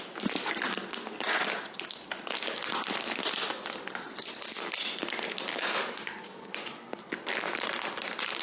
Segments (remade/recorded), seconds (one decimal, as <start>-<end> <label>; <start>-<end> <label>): 0.0-5.5 recorded; 5.5-6.5 remade; 6.5-8.4 recorded